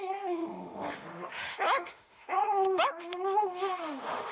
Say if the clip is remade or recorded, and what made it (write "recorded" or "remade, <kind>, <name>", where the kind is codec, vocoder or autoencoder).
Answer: remade, autoencoder, DAC-VAE